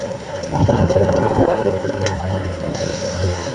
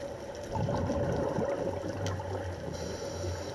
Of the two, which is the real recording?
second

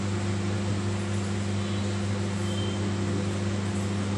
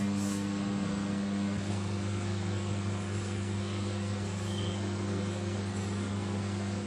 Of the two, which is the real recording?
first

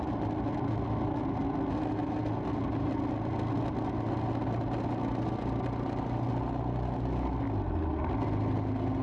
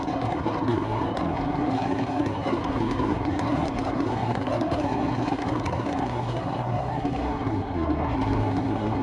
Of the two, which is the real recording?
first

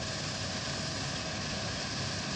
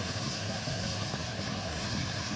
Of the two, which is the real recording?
first